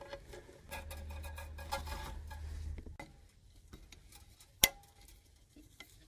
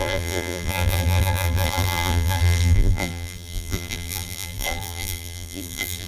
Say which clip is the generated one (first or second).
second